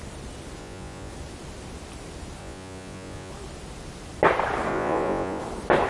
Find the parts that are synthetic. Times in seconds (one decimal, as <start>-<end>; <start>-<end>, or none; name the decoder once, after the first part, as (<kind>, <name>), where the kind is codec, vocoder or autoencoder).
0.6-1.1 (vocoder, Vocos); 2.4-3.3; 4.7-5.4